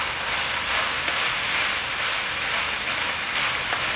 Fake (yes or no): no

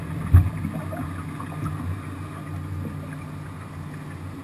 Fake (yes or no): no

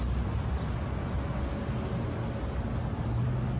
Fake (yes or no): no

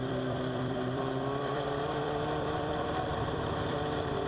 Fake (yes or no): yes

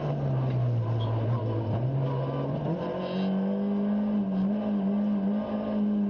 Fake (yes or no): no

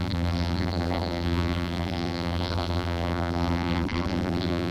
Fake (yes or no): yes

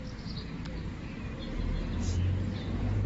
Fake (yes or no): no